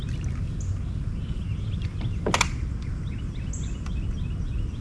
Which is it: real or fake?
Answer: real